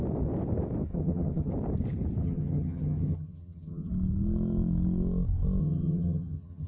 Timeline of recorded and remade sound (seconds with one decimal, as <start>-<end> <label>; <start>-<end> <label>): 0.0-0.9 recorded; 0.9-1.5 remade; 1.5-2.2 recorded; 2.2-3.9 remade; 3.9-5.6 recorded; 5.6-6.7 remade